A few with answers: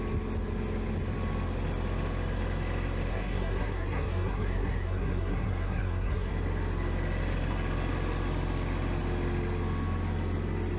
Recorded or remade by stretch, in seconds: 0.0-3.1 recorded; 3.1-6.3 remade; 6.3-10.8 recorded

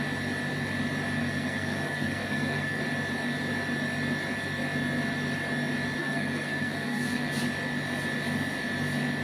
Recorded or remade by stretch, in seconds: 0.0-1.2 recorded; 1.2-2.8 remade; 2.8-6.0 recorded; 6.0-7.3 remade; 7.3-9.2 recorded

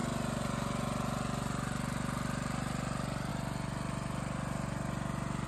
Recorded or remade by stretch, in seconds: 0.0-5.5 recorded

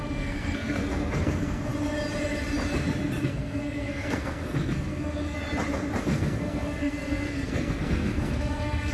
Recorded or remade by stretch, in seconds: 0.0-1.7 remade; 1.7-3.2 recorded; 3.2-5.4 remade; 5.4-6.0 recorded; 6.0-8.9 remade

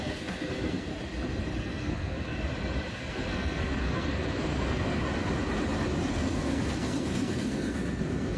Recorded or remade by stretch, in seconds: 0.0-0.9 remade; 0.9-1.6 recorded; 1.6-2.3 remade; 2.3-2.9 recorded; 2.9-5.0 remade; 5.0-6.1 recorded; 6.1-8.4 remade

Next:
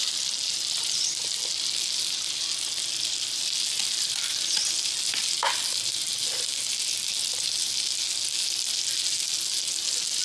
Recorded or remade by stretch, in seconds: 0.0-10.2 recorded